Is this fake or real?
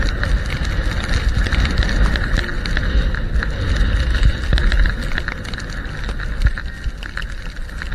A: real